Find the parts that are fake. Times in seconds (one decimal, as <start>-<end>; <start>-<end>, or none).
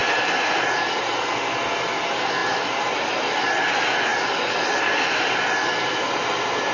none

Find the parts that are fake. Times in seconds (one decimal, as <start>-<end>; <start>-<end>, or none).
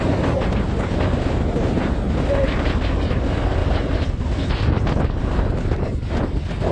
none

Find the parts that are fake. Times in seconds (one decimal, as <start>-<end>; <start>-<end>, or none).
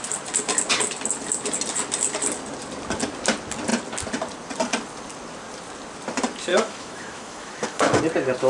6.5-8.0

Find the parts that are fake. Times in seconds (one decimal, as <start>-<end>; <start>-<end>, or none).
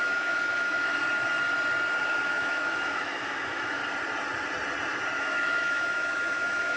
0.0-1.0; 2.0-3.8; 5.2-6.8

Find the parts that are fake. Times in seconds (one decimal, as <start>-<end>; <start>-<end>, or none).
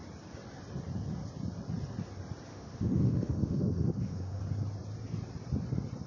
2.5-4.4